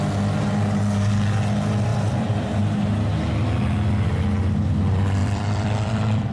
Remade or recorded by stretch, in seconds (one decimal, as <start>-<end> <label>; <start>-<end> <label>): 0.0-1.9 recorded; 1.9-2.6 remade; 2.6-5.2 recorded; 5.2-6.3 remade

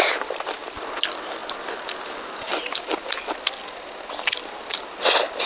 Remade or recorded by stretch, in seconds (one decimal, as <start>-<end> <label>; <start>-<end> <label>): 0.0-5.5 recorded

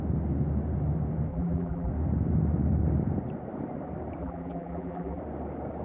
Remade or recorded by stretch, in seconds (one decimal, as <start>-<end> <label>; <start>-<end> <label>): 0.0-1.3 recorded; 1.3-1.9 remade; 1.9-4.2 recorded; 4.2-5.2 remade; 5.2-5.8 recorded

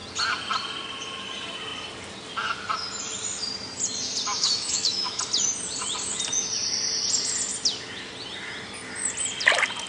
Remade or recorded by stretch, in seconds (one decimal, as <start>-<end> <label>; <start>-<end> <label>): 0.0-4.3 recorded; 4.3-5.2 remade; 5.2-9.9 recorded

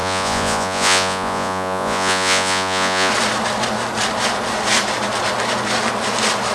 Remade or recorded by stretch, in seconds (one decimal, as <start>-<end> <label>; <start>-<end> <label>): 0.0-3.1 remade; 3.1-6.5 recorded